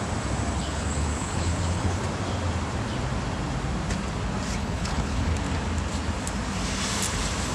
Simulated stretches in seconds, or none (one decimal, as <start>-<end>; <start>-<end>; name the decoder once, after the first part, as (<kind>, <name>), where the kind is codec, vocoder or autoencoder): 0.6-2.0 (codec, HILCodec); 4.6-5.3